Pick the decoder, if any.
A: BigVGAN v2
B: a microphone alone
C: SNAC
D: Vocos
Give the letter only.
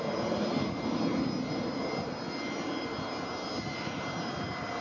B